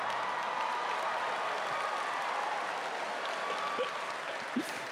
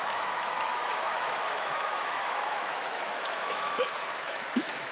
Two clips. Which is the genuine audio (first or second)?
first